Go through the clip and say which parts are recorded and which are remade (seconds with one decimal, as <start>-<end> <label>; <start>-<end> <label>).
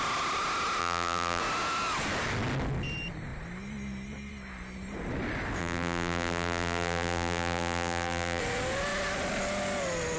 0.0-0.8 recorded; 0.8-1.4 remade; 1.4-5.6 recorded; 5.6-8.4 remade; 8.4-10.2 recorded